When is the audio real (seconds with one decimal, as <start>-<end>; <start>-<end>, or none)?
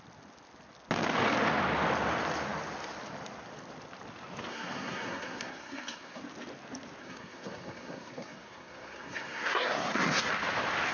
0.0-4.5; 6.2-7.0; 10.3-10.9